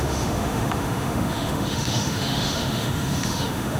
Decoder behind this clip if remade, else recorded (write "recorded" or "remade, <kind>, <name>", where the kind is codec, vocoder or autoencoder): remade, autoencoder, DAC-VAE